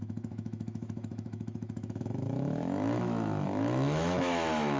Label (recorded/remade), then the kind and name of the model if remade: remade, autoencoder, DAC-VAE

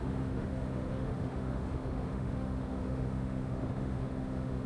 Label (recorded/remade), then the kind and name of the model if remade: remade, autoencoder, DAC-VAE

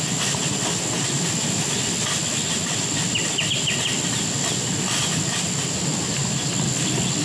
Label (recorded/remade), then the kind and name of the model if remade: recorded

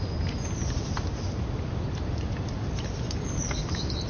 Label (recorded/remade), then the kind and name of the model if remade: recorded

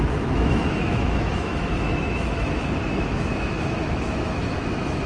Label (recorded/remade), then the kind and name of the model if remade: remade, autoencoder, DAC-VAE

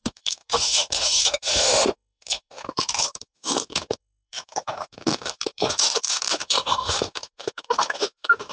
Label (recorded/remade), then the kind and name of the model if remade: remade, autoencoder, DAC-VAE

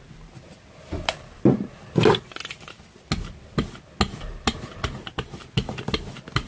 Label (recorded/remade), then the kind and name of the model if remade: recorded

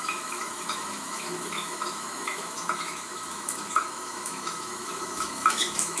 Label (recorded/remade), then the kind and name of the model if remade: remade, autoencoder, DAC-VAE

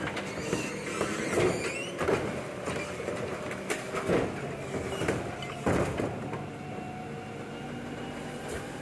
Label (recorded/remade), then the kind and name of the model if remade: recorded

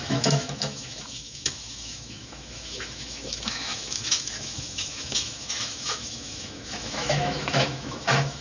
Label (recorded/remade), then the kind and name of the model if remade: remade, autoencoder, DAC-VAE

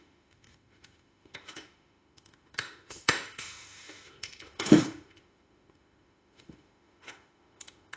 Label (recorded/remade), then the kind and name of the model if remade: remade, autoencoder, DAC-VAE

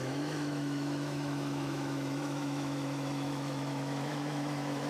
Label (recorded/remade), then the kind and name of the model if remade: remade, autoencoder, DAC-VAE